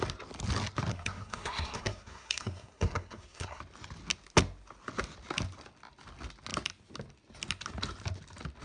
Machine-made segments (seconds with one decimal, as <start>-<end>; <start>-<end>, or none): 0.9-3.6